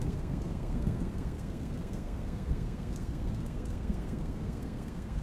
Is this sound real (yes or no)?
no